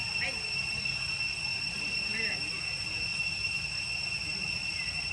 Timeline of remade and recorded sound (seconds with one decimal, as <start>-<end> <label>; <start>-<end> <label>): 0.0-5.1 recorded